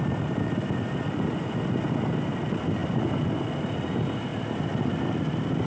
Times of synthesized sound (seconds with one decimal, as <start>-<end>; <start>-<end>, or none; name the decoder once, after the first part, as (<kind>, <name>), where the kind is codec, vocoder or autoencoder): none